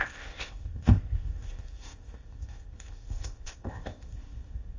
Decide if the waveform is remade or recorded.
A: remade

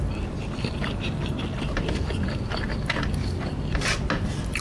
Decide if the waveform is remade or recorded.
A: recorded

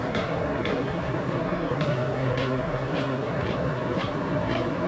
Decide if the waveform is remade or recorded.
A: remade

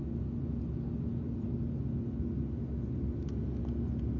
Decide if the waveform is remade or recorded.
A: recorded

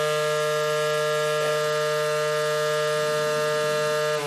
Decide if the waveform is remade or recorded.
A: recorded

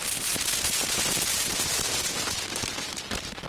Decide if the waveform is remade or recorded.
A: remade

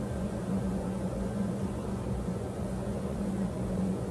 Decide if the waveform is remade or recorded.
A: remade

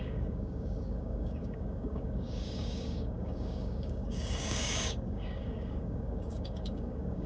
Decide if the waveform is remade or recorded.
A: remade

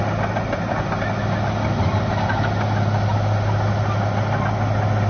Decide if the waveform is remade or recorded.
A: recorded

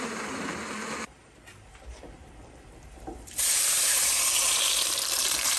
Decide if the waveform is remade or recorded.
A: remade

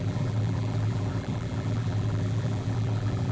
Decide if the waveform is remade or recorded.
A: remade